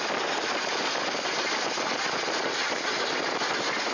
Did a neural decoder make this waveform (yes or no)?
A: no